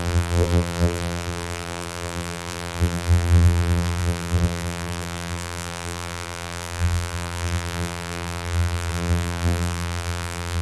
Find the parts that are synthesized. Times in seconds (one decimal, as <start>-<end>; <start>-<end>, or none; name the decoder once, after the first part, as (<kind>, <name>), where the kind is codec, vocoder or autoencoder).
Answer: 0.0-10.6 (vocoder, BigVGAN v2)

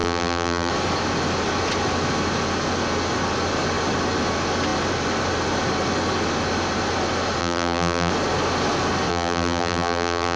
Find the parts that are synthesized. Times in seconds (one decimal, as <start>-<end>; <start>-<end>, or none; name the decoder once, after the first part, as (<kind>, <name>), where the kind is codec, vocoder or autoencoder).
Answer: 0.0-0.7 (vocoder, BigVGAN v2); 7.4-8.1; 9.1-10.4